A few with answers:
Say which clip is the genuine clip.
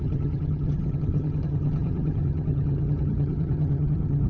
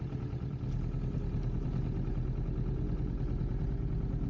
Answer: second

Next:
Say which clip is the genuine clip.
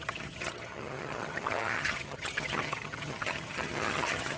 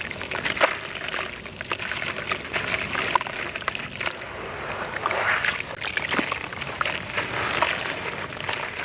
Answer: second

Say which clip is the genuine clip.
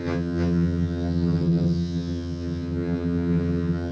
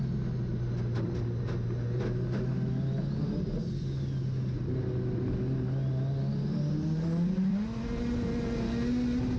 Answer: second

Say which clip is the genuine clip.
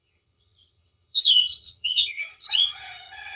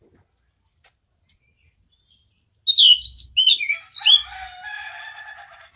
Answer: second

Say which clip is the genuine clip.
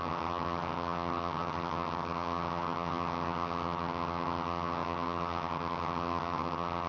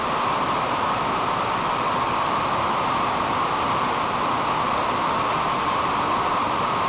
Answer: second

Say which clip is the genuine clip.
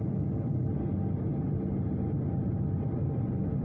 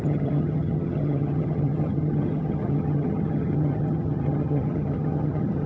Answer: first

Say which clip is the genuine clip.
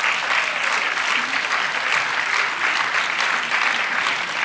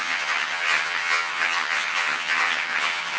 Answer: first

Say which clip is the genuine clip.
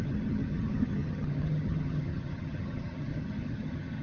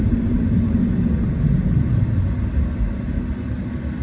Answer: second